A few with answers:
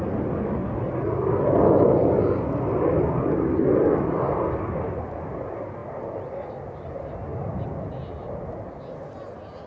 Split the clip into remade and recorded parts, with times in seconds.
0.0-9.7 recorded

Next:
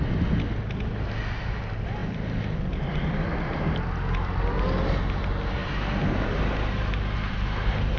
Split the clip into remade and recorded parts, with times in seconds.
0.0-8.0 recorded

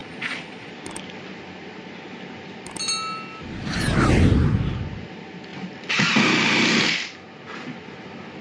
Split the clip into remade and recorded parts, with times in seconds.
0.0-0.7 remade; 0.7-8.4 recorded